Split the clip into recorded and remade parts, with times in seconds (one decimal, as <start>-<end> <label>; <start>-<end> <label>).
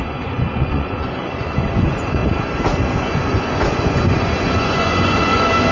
0.0-2.2 remade; 2.2-2.9 recorded; 2.9-5.7 remade